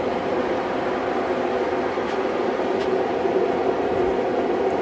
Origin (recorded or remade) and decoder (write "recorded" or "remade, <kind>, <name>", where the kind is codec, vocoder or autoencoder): recorded